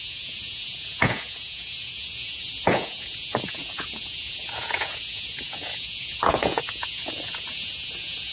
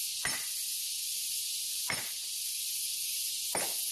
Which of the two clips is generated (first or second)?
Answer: first